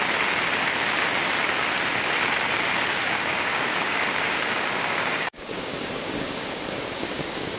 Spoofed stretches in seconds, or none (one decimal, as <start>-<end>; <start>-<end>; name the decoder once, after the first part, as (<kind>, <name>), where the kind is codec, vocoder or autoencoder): 2.9-7.6 (codec, DAC)